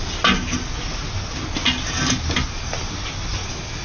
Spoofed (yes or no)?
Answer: no